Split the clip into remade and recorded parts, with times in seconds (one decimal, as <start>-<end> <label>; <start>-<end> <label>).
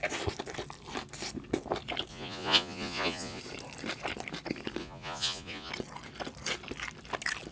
0.0-2.1 recorded; 2.1-3.4 remade; 3.4-4.8 recorded; 4.8-5.7 remade; 5.7-7.5 recorded